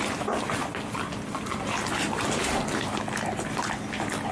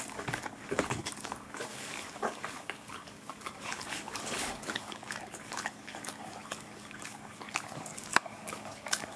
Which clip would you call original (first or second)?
first